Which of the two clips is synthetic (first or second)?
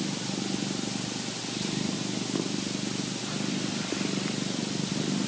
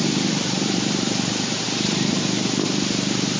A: second